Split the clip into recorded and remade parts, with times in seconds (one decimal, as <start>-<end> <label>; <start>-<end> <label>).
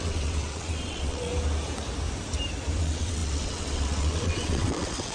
0.0-1.3 remade; 1.3-2.8 recorded; 2.8-5.1 remade